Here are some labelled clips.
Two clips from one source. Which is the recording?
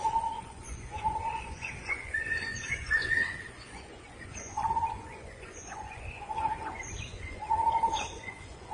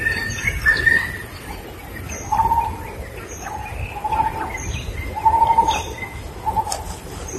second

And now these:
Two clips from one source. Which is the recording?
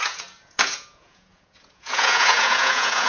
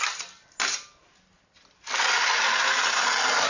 second